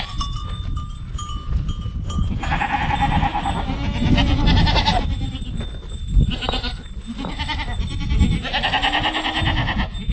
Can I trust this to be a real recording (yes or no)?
yes